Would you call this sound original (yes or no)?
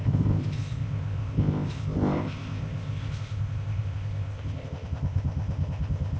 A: no